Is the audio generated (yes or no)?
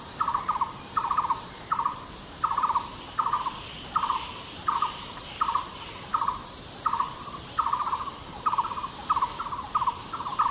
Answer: yes